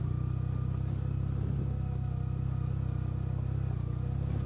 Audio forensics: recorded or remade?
recorded